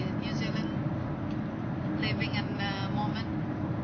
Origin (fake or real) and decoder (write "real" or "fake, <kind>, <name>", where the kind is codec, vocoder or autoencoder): real